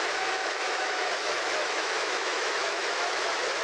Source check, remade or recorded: remade